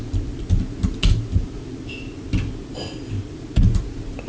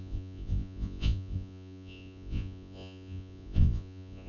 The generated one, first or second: second